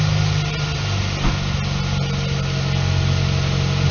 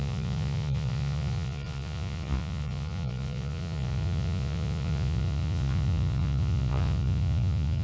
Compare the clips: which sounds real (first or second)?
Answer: first